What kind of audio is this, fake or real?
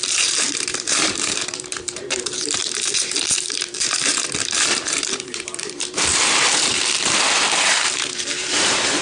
fake